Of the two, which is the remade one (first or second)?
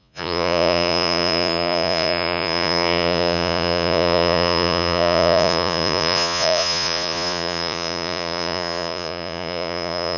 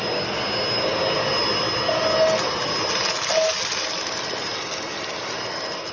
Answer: first